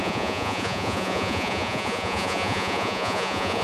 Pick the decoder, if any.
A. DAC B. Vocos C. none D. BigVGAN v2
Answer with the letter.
B